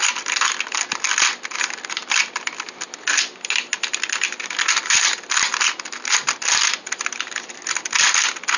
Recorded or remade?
recorded